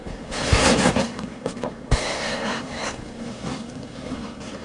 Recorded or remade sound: remade